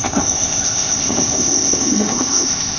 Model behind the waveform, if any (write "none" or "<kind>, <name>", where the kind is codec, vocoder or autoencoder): codec, ZipCodec